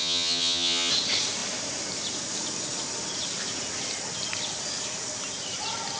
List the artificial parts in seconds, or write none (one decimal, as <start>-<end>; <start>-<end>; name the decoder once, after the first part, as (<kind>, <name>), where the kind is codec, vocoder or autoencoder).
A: 0.0-0.9 (vocoder, HiFi-GAN)